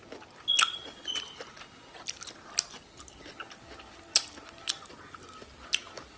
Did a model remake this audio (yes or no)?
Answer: no